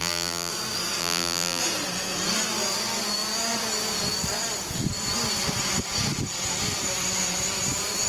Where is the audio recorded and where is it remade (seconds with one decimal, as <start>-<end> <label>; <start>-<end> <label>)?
0.0-0.5 remade; 0.5-1.0 recorded; 1.0-1.6 remade; 1.6-8.1 recorded